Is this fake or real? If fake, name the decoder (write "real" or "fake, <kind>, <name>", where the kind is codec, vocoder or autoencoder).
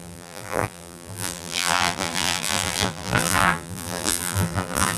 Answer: fake, vocoder, BigVGAN v2